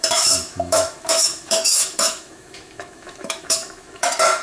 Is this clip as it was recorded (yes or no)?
no